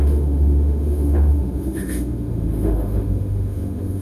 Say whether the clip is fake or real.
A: fake